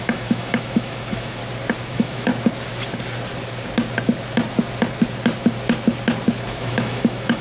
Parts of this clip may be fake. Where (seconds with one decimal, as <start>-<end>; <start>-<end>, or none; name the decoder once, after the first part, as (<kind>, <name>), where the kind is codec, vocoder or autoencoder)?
0.0-1.4 (autoencoder, DAC-VAE); 1.9-2.3; 6.5-7.4